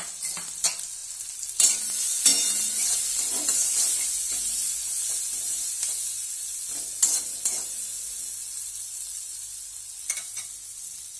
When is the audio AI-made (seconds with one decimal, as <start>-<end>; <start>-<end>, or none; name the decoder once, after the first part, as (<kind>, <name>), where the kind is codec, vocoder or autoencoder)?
none